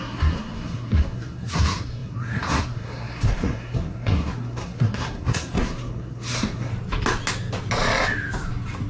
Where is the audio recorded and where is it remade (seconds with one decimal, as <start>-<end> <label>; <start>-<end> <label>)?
0.0-6.7 remade; 6.7-8.9 recorded